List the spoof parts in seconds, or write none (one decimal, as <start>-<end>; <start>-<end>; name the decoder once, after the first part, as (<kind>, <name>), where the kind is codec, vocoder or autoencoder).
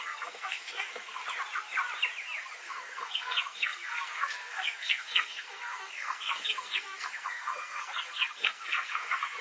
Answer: 0.0-1.2 (codec, SNAC); 2.6-9.4